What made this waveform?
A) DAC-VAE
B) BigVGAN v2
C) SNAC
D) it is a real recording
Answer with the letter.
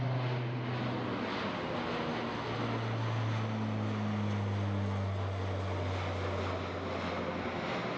D